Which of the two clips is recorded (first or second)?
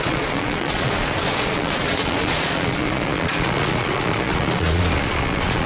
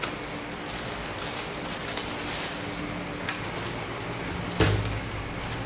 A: second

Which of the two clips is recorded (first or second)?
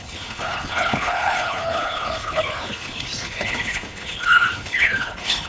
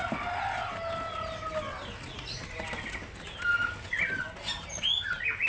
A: second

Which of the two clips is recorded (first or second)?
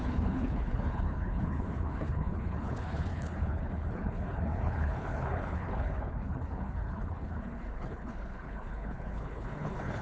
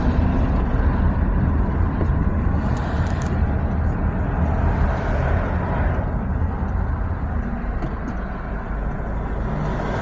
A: second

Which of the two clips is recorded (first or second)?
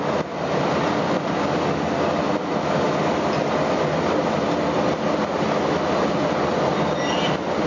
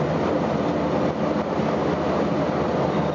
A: first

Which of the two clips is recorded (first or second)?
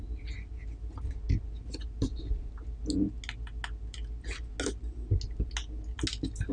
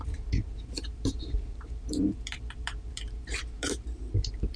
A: first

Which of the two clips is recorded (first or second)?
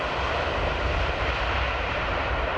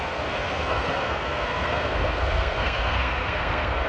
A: first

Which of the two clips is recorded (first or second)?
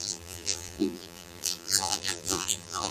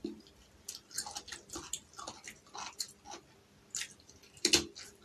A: second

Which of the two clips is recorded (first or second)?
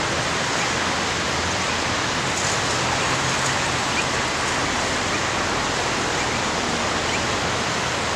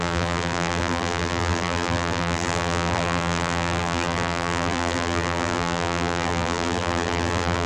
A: first